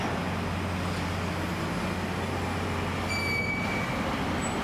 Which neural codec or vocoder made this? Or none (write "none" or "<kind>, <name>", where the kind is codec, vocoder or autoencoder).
none